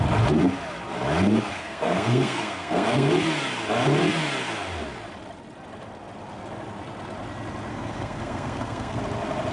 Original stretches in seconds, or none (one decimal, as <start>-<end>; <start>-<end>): 0.0-1.5; 3.1-7.7; 9.0-9.5